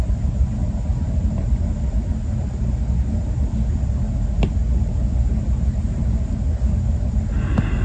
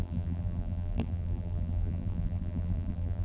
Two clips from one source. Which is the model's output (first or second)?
second